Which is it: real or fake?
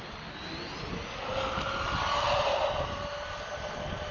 real